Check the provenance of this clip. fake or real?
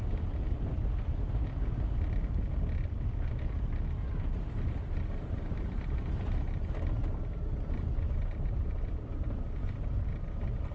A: real